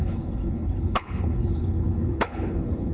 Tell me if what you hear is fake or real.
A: fake